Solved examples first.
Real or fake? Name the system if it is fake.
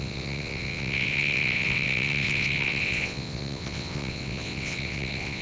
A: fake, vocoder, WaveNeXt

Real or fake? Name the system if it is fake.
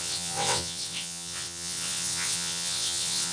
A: fake, vocoder, WaveNeXt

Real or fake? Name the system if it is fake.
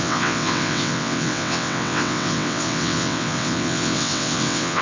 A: fake, vocoder, WaveNeXt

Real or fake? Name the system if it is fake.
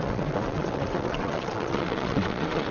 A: fake, vocoder, WaveNeXt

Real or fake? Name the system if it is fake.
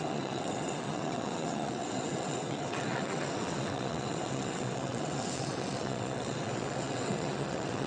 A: fake, vocoder, WaveNeXt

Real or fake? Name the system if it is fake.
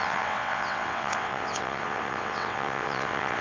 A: fake, vocoder, WaveNeXt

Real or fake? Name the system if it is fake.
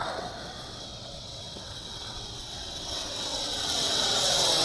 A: fake, vocoder, WaveNeXt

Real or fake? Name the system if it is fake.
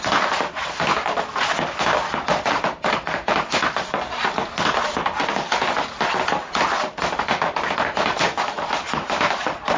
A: real